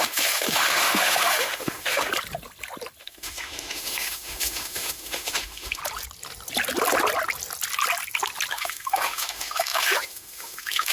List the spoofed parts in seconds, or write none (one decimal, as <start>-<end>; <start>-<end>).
0.0-2.1; 3.0-5.8; 8.5-10.9